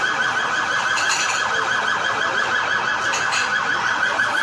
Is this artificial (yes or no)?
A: no